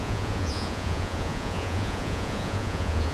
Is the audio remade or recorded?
remade